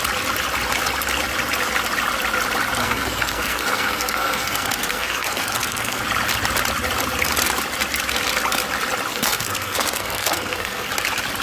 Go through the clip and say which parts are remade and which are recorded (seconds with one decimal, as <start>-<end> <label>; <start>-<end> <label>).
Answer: 0.0-2.8 recorded; 2.8-6.0 remade; 6.0-9.1 recorded; 9.1-10.9 remade; 10.9-11.4 recorded